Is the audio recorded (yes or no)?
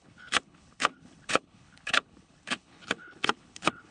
no